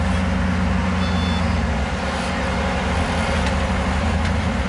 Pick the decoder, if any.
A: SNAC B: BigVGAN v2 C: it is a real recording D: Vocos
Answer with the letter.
C